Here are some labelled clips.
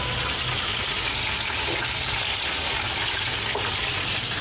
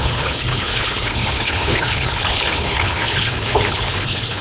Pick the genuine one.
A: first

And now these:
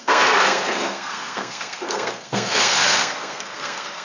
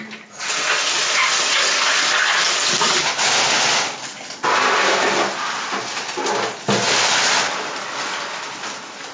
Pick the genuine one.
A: second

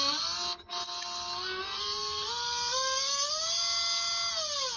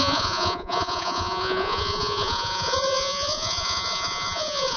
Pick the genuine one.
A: first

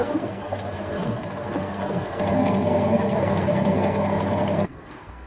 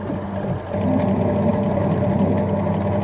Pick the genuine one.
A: second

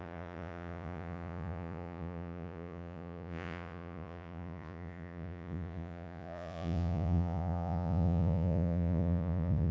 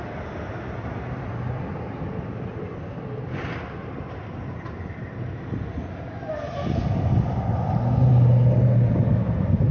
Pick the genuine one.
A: second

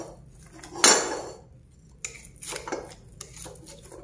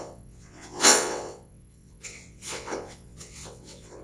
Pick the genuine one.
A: first